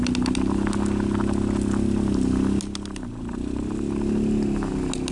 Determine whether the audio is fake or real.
real